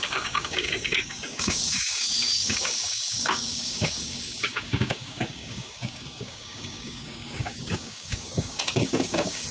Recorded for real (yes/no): no